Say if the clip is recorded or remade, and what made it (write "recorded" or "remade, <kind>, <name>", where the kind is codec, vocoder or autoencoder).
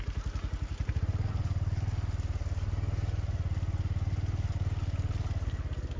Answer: recorded